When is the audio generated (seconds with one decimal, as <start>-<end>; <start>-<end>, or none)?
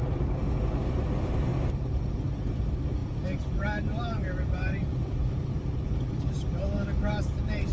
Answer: 0.8-7.7